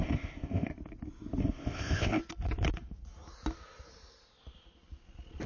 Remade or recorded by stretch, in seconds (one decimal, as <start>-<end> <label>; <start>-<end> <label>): 0.0-0.7 remade; 0.7-1.4 recorded; 1.4-2.2 remade; 2.2-5.5 recorded